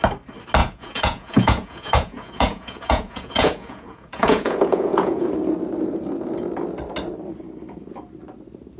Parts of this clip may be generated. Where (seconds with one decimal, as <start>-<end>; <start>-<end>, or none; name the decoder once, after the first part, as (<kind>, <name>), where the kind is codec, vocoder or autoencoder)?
0.6-5.3 (vocoder, Vocos)